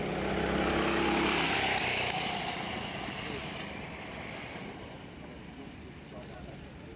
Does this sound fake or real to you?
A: real